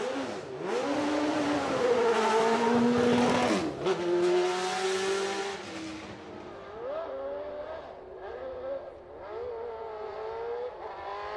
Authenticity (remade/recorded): recorded